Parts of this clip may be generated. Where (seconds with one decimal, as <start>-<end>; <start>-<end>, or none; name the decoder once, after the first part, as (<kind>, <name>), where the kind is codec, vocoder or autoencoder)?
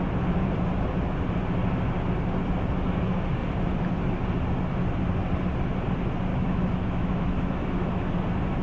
6.3-8.1 (autoencoder, DAC-VAE)